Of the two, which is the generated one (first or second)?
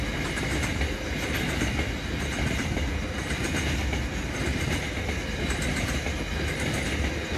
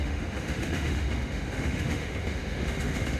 second